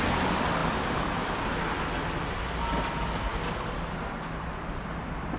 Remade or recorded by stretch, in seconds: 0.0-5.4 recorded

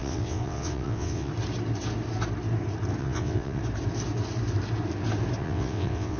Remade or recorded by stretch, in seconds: 0.0-1.3 remade; 1.3-3.0 recorded; 3.0-3.6 remade; 3.6-5.4 recorded; 5.4-6.2 remade

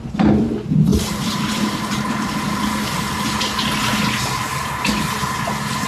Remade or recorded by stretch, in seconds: 0.0-5.9 recorded

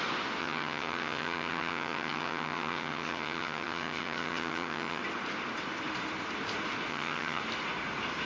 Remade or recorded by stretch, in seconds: 0.0-0.4 recorded; 0.4-5.0 remade; 5.0-6.9 recorded; 6.9-7.4 remade; 7.4-8.3 recorded